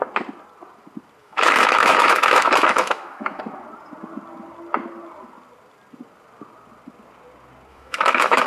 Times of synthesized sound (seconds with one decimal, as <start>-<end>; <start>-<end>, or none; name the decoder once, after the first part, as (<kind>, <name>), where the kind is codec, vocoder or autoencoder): 1.2-3.4 (autoencoder, DAC-VAE); 7.7-8.5